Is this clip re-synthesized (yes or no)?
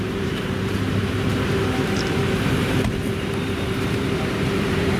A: yes